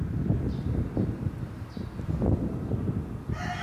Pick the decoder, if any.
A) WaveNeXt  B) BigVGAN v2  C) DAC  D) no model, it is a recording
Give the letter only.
D